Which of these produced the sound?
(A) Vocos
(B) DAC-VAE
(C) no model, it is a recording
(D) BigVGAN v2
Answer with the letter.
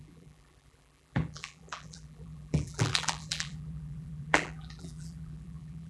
D